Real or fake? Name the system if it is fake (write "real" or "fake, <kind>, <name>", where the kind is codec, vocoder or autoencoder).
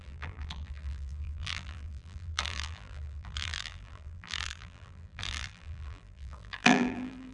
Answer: fake, vocoder, BigVGAN v2